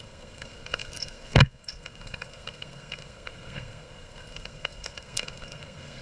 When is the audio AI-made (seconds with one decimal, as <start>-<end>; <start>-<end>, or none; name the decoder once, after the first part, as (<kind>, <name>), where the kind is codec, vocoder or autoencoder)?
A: 0.0-6.0 (codec, SNAC)